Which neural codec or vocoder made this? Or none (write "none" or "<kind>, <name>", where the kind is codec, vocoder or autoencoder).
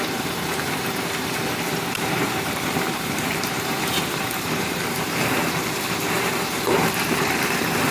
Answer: vocoder, BigVGAN v2